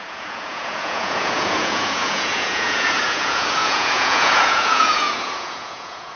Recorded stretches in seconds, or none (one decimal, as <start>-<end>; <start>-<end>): none